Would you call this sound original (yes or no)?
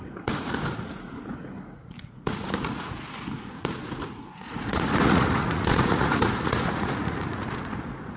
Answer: no